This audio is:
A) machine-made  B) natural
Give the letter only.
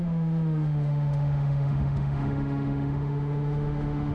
A